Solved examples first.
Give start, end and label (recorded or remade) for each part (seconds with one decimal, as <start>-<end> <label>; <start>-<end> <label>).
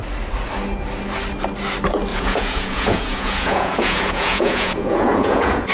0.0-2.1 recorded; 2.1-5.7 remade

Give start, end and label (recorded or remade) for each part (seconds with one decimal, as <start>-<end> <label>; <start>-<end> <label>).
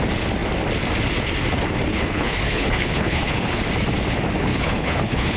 0.0-1.9 recorded; 1.9-3.6 remade; 3.6-4.5 recorded; 4.5-5.4 remade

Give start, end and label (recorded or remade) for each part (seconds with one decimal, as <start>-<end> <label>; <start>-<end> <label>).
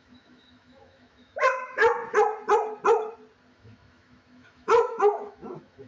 0.0-1.8 remade; 1.8-3.5 recorded; 3.5-5.9 remade